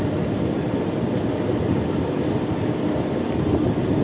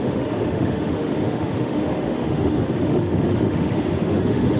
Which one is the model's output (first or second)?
second